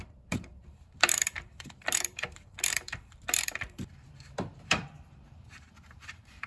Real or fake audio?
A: fake